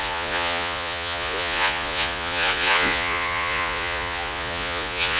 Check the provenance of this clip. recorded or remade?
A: remade